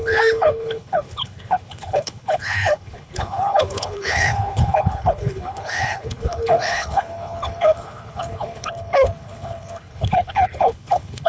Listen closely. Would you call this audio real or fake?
fake